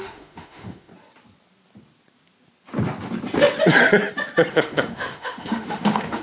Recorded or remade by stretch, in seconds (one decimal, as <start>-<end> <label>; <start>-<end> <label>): 0.0-0.9 remade; 0.9-4.5 recorded; 4.5-6.2 remade